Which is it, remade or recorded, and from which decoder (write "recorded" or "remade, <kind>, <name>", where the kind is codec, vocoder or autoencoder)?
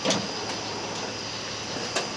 recorded